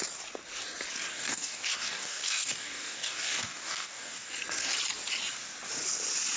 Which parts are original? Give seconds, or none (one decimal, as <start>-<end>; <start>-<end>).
0.0-1.1; 4.3-6.4